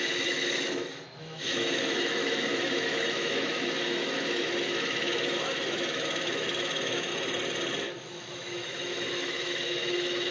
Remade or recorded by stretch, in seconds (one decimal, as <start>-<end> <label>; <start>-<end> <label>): 0.0-7.1 remade; 7.1-7.7 recorded; 7.7-10.3 remade